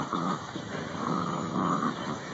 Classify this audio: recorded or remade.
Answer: remade